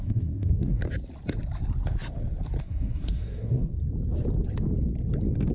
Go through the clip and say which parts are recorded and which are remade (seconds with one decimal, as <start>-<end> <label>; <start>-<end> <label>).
0.0-0.8 remade; 0.8-2.6 recorded; 2.6-3.8 remade; 3.8-5.5 recorded